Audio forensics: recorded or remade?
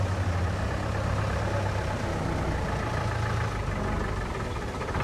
recorded